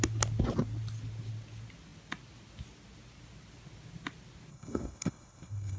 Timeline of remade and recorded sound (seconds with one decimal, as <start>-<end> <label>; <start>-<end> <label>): 0.0-4.5 recorded; 4.5-5.8 remade